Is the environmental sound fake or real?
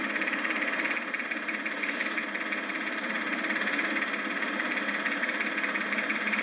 real